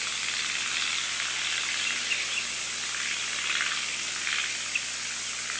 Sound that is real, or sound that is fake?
real